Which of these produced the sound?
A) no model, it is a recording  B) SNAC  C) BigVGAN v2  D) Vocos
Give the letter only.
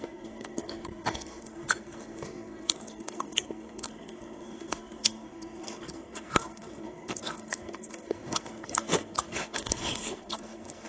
B